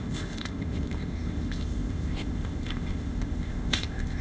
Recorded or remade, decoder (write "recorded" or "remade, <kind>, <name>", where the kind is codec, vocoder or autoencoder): remade, codec, ZipCodec